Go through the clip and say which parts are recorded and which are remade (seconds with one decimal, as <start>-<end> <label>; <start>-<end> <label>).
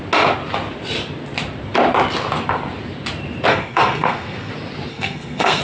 0.0-3.5 recorded; 3.5-4.5 remade; 4.5-4.9 recorded; 4.9-5.6 remade